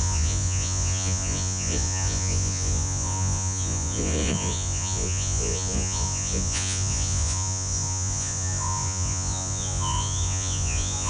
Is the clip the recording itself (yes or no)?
no